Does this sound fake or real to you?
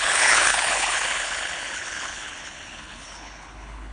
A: fake